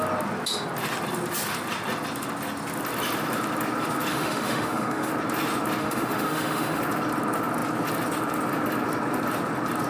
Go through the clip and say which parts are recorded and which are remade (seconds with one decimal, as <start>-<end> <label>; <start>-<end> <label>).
0.0-4.1 recorded; 4.1-5.1 remade; 5.1-5.8 recorded; 5.8-6.8 remade; 6.8-9.9 recorded